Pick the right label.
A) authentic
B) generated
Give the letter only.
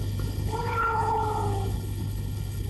B